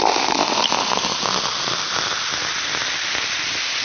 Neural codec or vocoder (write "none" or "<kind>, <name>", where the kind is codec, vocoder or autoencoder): none